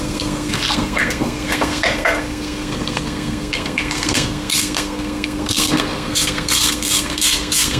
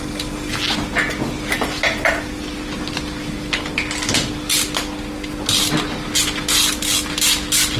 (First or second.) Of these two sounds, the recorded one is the second